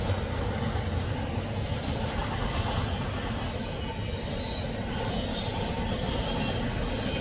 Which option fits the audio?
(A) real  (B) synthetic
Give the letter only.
A